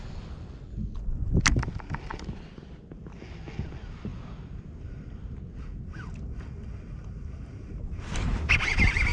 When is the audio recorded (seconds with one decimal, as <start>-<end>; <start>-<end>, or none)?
0.0-4.1; 5.8-9.1